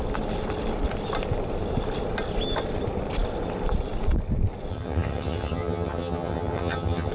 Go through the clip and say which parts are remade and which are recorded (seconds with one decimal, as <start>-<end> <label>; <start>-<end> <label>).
0.0-4.7 recorded; 4.7-7.1 remade